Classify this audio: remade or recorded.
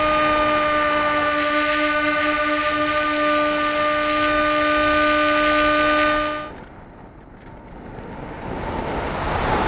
recorded